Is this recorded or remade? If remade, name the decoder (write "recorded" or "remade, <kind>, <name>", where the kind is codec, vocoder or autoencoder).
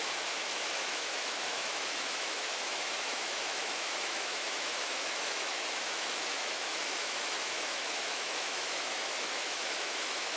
remade, autoencoder, DAC-VAE